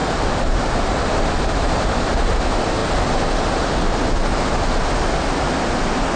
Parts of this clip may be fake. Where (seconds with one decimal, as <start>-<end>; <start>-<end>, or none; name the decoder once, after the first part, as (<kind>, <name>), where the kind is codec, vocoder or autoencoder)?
0.0-2.4 (vocoder, BigVGAN v2)